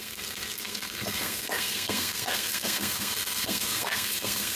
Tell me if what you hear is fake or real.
fake